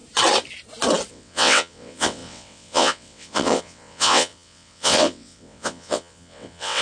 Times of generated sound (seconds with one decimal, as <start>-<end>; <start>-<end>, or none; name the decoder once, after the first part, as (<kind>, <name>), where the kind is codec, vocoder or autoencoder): 1.1-6.8 (vocoder, WaveNeXt)